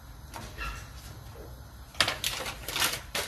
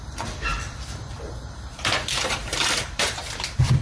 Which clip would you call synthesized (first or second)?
second